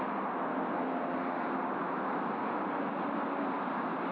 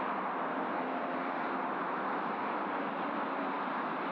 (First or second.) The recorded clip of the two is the first